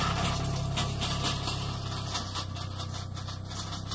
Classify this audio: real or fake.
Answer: real